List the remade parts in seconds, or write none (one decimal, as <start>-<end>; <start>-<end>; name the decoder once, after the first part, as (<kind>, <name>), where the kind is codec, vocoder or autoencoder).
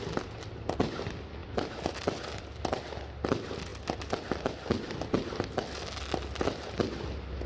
none